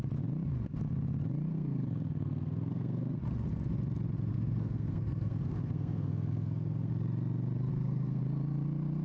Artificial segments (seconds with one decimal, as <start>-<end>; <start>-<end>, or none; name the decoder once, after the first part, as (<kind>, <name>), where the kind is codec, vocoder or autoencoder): 1.5-3.2 (codec, SNAC); 4.3-6.9; 7.7-8.2